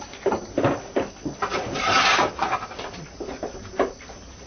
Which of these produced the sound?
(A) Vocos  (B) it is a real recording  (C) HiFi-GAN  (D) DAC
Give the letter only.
B